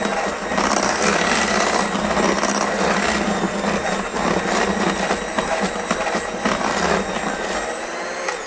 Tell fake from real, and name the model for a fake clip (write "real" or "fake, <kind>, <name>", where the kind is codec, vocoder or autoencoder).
real